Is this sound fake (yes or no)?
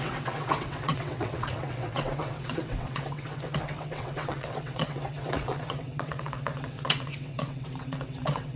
yes